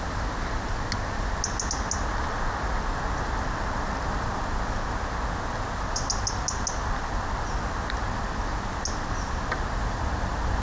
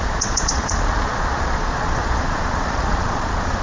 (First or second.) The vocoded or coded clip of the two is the second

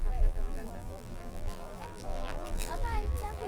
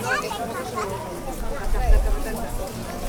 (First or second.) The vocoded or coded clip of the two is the first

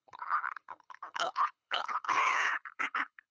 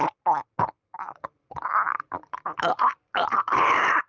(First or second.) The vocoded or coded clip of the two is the first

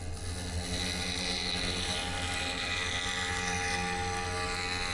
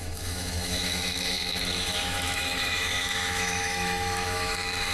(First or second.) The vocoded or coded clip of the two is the second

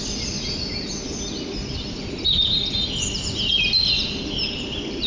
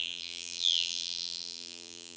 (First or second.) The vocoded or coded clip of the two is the second